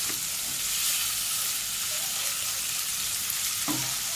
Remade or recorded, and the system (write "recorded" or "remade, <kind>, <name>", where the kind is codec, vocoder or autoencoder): recorded